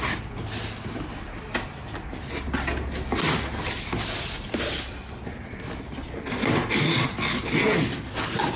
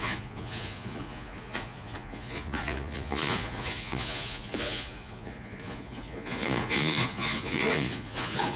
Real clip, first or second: first